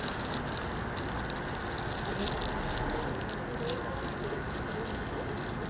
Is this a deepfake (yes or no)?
no